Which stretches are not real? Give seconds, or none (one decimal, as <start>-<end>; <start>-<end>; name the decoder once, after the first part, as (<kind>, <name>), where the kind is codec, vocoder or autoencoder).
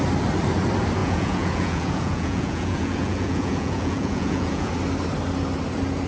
1.0-4.7 (vocoder, Vocos)